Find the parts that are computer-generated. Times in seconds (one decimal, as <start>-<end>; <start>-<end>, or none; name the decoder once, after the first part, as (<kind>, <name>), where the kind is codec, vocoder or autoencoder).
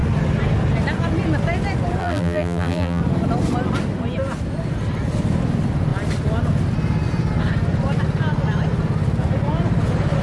2.0-3.0 (vocoder, BigVGAN v2)